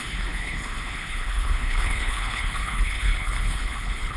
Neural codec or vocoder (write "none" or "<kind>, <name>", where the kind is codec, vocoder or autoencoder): codec, HILCodec